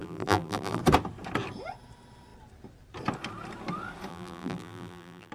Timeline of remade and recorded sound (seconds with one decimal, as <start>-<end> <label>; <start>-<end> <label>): 0.0-0.8 remade; 0.8-4.1 recorded; 4.1-5.3 remade